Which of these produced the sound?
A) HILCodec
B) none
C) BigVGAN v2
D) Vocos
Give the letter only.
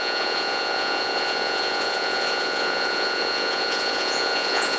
D